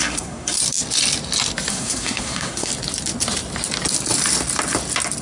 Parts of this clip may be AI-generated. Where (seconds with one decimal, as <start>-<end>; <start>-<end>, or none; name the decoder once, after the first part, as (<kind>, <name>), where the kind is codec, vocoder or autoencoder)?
0.0-0.6 (codec, SNAC); 1.7-2.7